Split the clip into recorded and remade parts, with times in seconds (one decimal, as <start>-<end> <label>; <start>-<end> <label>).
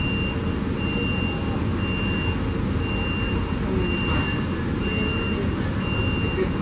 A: 0.0-6.6 recorded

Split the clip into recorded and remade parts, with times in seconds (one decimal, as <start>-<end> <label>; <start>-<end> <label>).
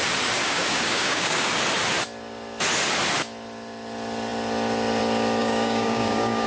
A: 0.0-0.4 recorded; 0.4-1.5 remade; 1.5-5.4 recorded; 5.4-6.5 remade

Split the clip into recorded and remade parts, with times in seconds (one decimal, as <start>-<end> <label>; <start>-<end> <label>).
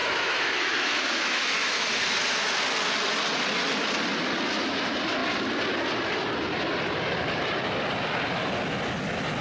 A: 0.0-2.0 remade; 2.0-9.4 recorded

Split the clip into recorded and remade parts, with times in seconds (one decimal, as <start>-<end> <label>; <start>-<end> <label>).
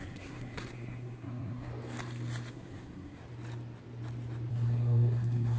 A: 0.0-1.7 remade; 1.7-2.5 recorded; 2.5-3.2 remade; 3.2-4.5 recorded; 4.5-5.6 remade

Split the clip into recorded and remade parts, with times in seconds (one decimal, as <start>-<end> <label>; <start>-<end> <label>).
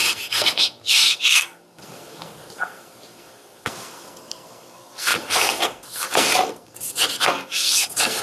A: 0.0-8.2 remade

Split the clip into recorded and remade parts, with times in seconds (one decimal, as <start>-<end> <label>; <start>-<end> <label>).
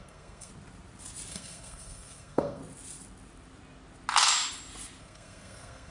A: 0.0-0.5 remade; 0.5-1.3 recorded; 1.3-2.6 remade; 2.6-5.0 recorded; 5.0-5.9 remade